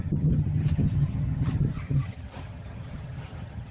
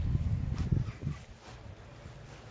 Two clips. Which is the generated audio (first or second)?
first